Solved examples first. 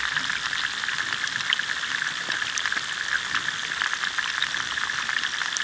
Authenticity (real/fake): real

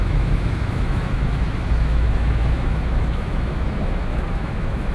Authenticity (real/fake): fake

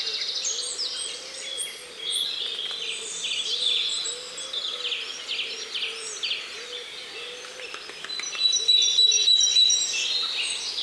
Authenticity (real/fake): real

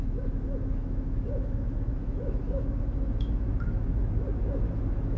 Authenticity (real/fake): fake